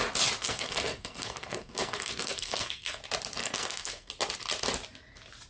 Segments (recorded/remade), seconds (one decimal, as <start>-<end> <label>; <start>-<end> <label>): 0.0-0.4 recorded; 0.4-3.0 remade; 3.0-3.4 recorded; 3.4-4.1 remade; 4.1-5.5 recorded